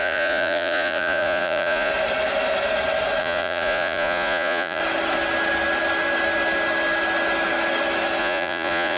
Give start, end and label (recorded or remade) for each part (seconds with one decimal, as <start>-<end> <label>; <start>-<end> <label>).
0.0-1.9 remade; 1.9-3.2 recorded; 3.2-4.8 remade; 4.8-8.2 recorded; 8.2-9.0 remade